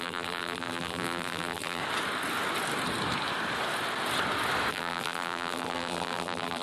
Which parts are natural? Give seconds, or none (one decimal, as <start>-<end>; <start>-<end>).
1.8-4.7